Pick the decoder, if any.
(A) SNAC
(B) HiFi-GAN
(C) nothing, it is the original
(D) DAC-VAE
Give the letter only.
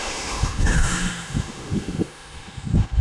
D